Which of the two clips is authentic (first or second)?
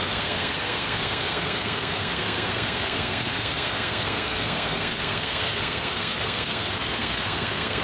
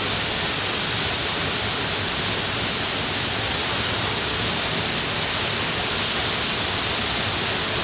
second